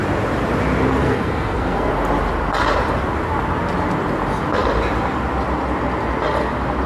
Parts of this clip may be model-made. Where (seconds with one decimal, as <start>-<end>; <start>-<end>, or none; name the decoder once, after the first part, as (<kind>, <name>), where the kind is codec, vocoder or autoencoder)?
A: 1.0-1.9 (codec, SNAC)